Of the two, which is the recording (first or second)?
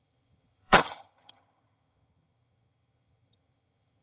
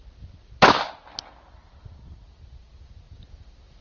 second